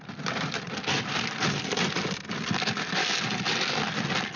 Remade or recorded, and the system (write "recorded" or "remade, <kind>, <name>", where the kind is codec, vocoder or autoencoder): recorded